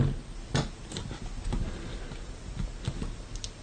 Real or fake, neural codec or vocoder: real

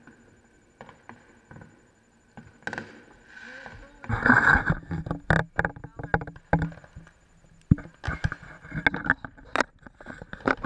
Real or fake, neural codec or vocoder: real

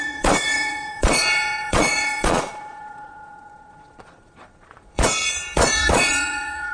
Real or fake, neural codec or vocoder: fake, vocoder, Vocos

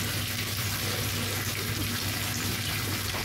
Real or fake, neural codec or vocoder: real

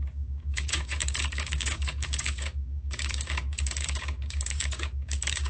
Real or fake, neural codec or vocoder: fake, codec, DAC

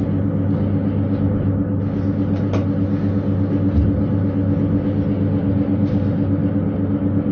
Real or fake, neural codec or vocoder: real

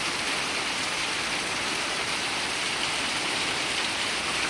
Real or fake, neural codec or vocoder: real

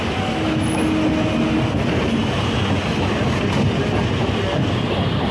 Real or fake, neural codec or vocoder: real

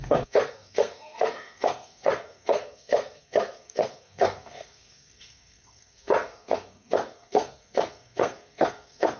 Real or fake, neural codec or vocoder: fake, codec, SNAC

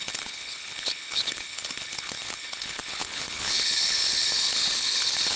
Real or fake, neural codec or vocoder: fake, codec, HILCodec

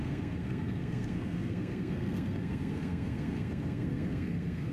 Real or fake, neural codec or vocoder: fake, codec, SNAC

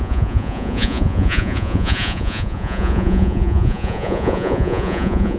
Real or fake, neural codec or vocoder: fake, vocoder, Vocos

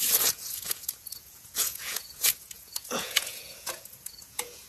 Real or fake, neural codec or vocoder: fake, vocoder, Vocos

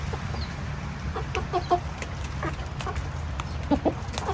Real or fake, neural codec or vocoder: real